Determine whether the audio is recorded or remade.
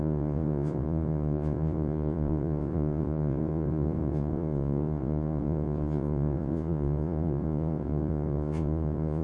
remade